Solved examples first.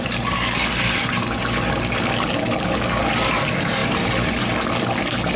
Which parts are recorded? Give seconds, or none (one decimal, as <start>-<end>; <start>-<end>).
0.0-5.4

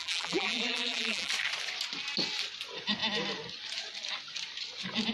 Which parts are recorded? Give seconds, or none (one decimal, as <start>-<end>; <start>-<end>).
1.3-5.1

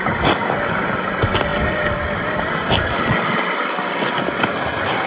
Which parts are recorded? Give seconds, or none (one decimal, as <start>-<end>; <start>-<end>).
0.0-5.1

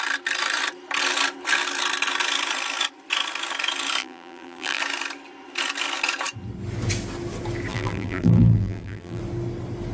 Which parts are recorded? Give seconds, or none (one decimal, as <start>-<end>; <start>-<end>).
0.0-4.0; 4.8-7.7; 9.2-9.9